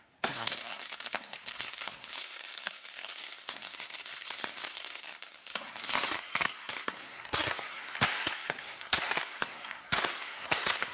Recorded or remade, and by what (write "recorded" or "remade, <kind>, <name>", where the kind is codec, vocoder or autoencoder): remade, codec, SNAC